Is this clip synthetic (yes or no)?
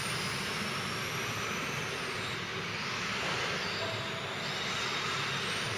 no